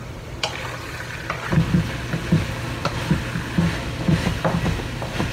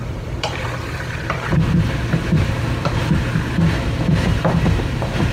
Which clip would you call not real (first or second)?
second